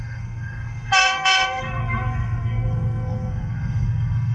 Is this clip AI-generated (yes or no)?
yes